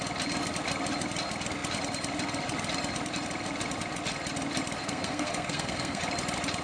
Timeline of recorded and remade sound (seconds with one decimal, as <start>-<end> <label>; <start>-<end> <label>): 0.0-4.8 recorded; 4.8-6.0 remade; 6.0-6.6 recorded